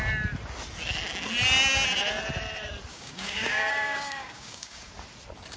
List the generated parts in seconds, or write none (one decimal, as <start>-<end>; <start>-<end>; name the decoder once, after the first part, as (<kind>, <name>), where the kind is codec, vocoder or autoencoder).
2.9-4.9 (codec, DAC)